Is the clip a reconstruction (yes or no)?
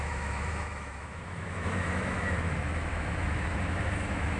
yes